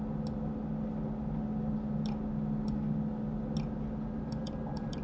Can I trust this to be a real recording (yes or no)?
yes